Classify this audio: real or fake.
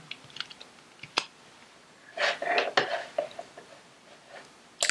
real